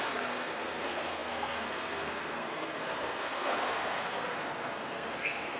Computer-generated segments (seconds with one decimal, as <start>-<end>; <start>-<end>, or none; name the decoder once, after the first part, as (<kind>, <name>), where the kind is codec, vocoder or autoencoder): 0.0-5.6 (codec, SNAC)